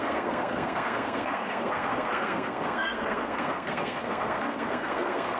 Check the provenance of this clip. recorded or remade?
remade